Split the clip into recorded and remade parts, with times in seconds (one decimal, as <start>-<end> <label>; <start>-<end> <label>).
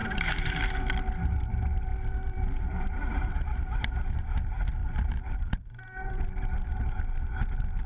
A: 0.0-0.6 remade; 0.6-1.9 recorded; 1.9-3.4 remade; 3.4-4.8 recorded; 4.8-6.2 remade; 6.2-7.9 recorded